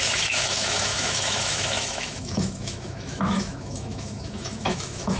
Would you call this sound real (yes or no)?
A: no